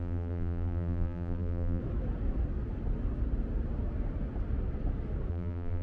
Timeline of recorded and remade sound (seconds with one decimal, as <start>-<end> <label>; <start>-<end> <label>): 0.0-1.8 remade; 1.8-5.3 recorded; 5.3-5.8 remade